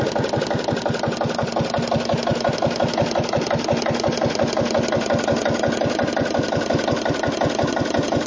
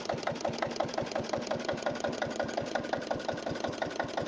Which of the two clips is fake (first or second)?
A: second